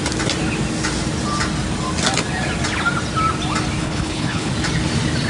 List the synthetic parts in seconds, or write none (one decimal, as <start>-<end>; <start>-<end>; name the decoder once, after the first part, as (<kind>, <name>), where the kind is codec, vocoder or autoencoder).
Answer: 3.8-4.5 (codec, HILCodec)